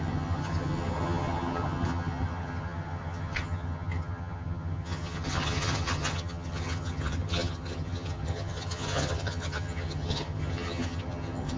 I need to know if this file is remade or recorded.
remade